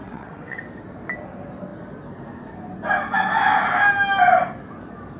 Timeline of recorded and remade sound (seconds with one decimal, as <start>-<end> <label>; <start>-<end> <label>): 0.0-0.6 remade; 0.6-5.2 recorded